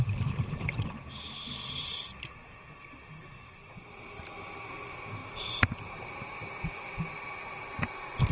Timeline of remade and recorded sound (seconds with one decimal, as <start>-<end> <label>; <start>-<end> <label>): 0.0-3.2 recorded; 3.2-3.9 remade; 3.9-5.2 recorded; 5.2-6.1 remade; 6.1-8.3 recorded